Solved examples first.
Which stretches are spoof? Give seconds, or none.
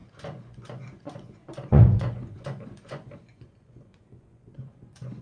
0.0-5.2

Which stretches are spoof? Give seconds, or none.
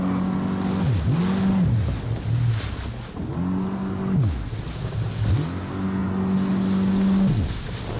none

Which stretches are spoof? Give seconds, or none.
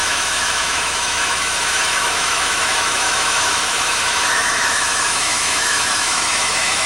0.0-6.9